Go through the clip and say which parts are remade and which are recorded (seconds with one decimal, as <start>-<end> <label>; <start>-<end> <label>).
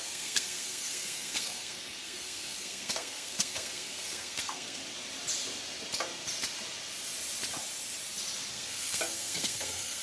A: 0.0-4.8 remade; 4.8-8.5 recorded; 8.5-10.0 remade